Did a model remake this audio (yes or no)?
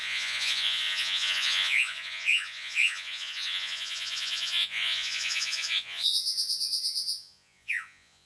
yes